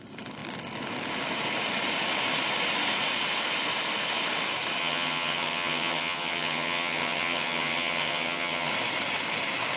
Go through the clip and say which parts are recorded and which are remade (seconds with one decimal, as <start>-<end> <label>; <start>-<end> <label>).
0.0-4.8 recorded; 4.8-8.7 remade; 8.7-9.8 recorded